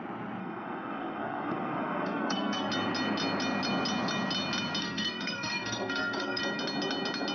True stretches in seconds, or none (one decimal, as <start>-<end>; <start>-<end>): 0.0-0.4; 2.7-4.8; 6.4-7.3